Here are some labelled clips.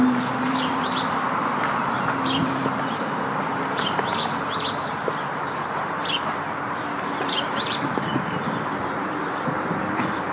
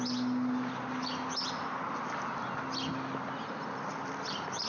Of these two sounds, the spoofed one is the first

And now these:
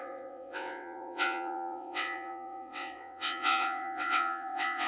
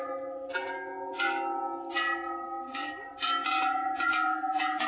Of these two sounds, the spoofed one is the first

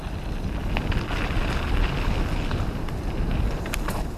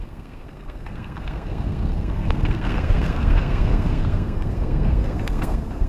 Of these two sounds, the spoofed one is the second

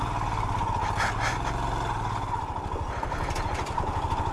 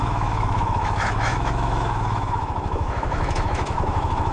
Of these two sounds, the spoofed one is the second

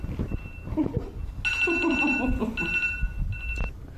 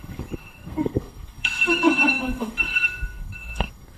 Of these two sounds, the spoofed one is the second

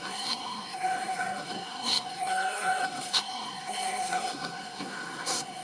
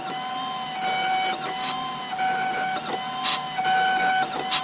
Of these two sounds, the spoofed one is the first